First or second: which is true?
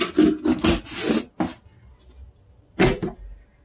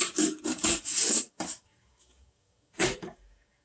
first